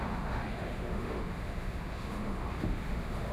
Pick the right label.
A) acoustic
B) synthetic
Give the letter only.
B